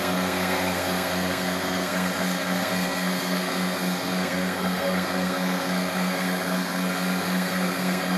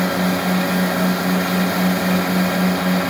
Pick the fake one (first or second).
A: first